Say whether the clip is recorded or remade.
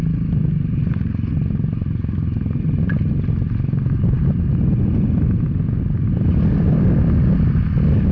recorded